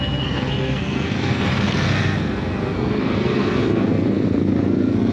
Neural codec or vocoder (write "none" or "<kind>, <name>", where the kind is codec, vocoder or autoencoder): codec, SNAC